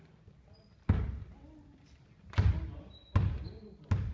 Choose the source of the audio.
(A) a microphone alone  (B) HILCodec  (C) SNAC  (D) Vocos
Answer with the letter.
A